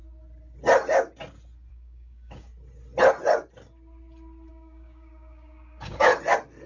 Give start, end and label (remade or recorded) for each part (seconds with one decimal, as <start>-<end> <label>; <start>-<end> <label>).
0.0-1.7 recorded; 1.7-2.5 remade; 2.5-4.5 recorded; 4.5-6.1 remade; 6.1-6.7 recorded